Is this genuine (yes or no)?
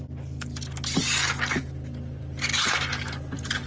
yes